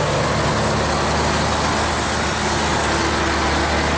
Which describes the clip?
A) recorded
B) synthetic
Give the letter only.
A